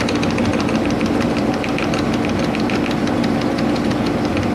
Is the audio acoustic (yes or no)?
yes